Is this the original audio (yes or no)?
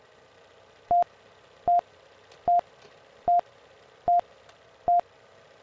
yes